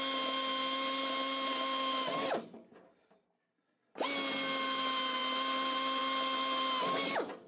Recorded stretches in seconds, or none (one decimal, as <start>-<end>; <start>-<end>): 0.0-7.5